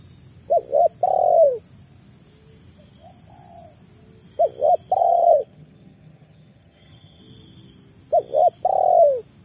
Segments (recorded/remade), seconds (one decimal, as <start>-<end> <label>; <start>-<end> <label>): 0.0-5.0 recorded; 5.0-7.2 remade; 7.2-9.4 recorded